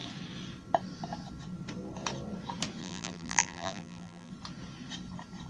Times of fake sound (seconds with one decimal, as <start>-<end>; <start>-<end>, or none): 2.8-4.3